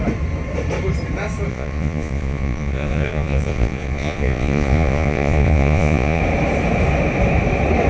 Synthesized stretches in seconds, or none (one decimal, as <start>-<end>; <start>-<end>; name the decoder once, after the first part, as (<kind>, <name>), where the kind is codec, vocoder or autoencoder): 1.5-6.2 (vocoder, Vocos)